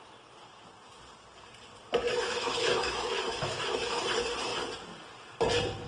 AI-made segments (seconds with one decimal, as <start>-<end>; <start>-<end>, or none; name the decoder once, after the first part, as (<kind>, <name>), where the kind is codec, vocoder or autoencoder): 2.2-4.0 (autoencoder, DAC-VAE)